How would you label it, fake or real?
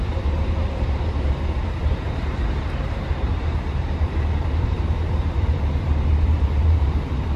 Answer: fake